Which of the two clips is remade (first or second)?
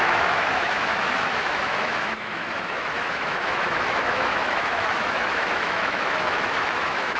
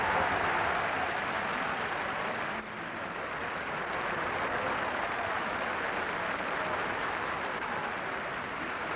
first